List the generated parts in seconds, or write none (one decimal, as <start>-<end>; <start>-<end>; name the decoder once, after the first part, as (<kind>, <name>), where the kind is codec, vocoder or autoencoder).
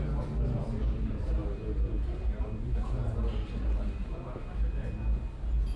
none